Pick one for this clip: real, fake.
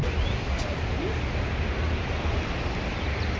real